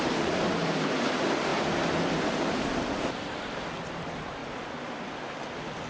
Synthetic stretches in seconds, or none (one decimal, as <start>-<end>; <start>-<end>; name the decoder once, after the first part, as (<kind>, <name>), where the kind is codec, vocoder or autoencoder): none